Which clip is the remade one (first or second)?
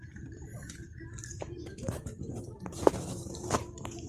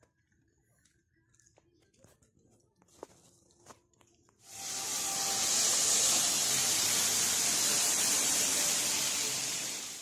first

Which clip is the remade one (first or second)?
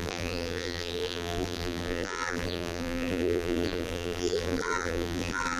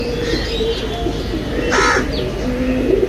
first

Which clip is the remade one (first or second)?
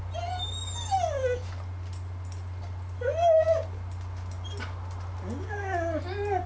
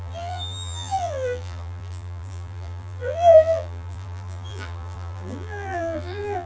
second